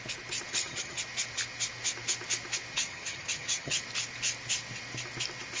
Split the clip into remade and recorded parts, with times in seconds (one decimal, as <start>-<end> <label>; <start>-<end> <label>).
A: 0.0-0.5 recorded; 0.5-1.0 remade; 1.0-2.8 recorded; 2.8-3.8 remade; 3.8-5.6 recorded